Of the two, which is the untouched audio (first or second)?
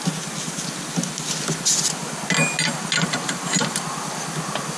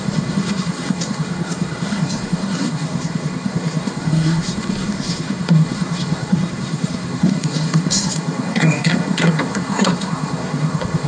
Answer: first